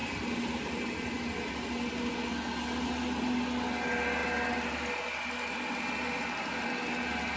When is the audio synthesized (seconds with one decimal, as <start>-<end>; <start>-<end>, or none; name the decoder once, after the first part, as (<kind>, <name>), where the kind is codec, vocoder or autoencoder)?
none